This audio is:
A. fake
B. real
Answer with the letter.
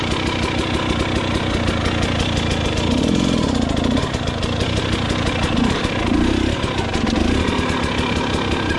B